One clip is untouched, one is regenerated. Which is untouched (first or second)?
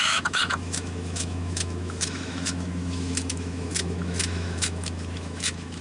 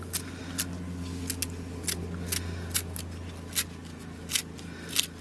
second